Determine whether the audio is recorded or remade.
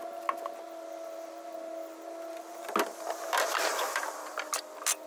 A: recorded